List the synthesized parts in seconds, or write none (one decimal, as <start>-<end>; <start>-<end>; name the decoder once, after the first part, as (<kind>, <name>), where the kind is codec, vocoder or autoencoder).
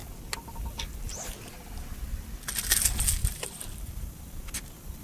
3.2-4.5 (vocoder, BigVGAN v2)